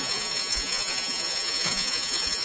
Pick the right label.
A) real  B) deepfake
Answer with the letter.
B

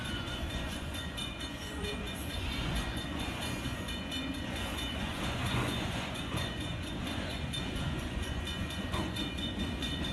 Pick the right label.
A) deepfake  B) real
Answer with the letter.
A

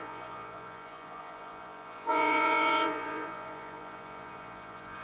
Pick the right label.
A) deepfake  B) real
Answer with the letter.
A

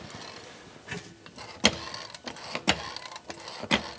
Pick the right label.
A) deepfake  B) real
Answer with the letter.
B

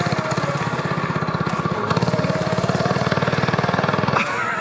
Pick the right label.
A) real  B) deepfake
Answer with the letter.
A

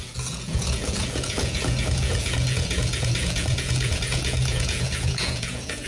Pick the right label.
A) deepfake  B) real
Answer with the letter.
A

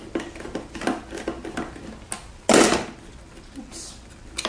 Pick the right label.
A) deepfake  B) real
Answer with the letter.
B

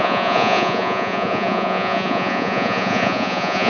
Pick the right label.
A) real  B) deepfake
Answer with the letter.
B